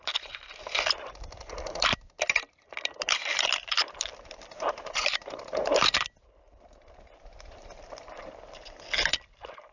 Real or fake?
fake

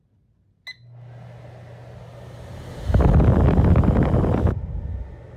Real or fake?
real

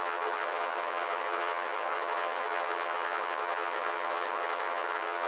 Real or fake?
fake